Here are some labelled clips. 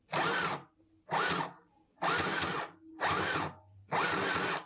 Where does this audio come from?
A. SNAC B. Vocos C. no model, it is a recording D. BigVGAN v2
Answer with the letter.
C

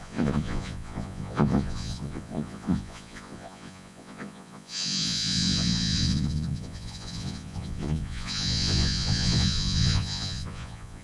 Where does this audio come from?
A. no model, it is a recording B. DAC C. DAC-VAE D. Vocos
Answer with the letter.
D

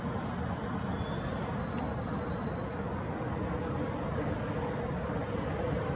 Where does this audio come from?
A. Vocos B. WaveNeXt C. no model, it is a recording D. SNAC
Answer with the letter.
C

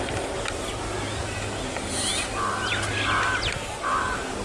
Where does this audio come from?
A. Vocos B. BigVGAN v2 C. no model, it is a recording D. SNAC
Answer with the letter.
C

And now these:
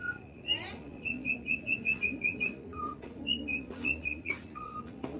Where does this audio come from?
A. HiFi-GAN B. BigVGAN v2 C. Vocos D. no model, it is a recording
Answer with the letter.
C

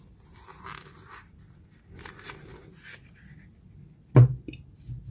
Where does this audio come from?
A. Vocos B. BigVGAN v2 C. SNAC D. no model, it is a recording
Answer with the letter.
D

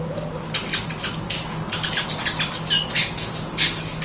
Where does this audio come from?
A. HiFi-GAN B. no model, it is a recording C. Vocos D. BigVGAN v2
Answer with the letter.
B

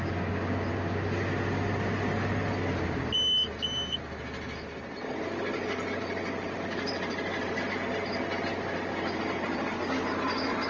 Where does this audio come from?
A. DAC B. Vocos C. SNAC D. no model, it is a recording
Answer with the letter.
D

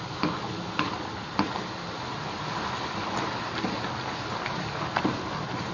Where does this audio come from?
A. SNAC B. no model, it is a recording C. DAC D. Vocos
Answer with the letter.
B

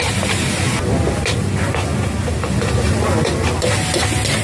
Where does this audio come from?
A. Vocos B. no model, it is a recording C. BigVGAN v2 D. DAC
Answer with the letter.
B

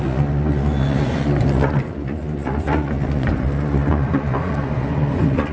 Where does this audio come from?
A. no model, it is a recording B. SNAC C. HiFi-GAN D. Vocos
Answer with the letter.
D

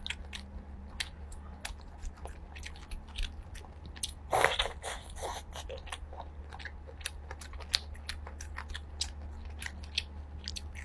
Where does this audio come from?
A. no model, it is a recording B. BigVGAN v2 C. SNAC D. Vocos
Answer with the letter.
A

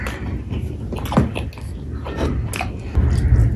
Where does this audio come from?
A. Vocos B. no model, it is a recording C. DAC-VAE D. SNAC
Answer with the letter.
B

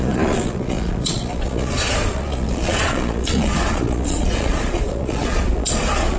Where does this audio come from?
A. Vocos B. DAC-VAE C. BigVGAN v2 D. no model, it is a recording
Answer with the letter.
A